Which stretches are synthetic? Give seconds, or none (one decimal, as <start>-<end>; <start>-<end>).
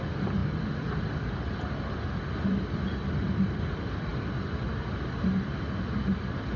none